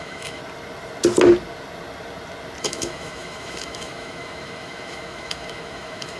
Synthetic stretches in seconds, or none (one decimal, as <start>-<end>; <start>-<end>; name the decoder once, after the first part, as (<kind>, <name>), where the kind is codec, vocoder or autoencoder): 0.0-0.4 (autoencoder, DAC-VAE); 2.6-6.2

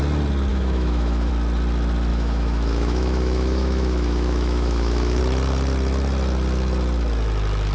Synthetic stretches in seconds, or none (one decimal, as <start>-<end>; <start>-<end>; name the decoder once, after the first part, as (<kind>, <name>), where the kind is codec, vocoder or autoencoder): 0.5-1.3 (autoencoder, DAC-VAE); 2.1-5.2

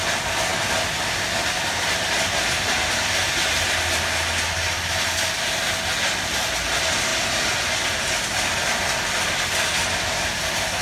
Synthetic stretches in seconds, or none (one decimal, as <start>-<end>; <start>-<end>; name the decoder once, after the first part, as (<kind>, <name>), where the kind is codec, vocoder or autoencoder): none

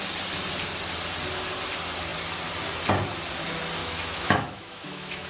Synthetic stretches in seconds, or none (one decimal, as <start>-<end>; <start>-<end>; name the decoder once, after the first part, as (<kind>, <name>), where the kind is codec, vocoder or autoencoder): 3.8-5.3 (autoencoder, DAC-VAE)

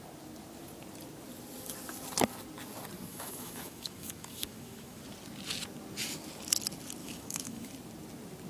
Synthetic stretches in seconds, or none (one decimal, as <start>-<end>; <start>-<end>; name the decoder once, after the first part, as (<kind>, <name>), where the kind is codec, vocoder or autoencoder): 3.1-5.0 (autoencoder, DAC-VAE); 7.0-7.7

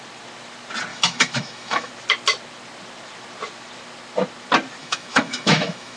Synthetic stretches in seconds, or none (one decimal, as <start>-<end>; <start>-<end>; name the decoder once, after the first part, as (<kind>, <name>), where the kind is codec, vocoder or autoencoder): 0.9-1.9 (autoencoder, DAC-VAE); 4.8-6.0

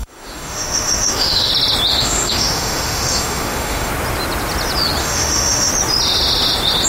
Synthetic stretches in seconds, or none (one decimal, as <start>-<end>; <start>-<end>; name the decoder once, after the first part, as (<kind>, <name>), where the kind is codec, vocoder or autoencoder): 0.0-1.5 (autoencoder, DAC-VAE); 1.9-3.9; 5.0-5.7